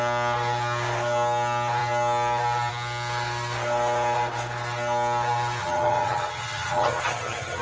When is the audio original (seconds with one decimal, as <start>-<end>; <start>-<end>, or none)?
0.0-5.6